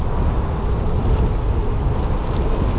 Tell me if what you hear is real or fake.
real